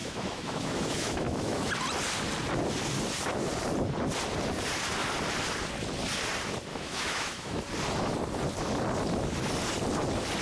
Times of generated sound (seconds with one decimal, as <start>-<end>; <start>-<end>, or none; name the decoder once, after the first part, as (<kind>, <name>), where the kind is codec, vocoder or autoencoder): 0.0-1.7 (autoencoder, DAC-VAE); 6.7-7.6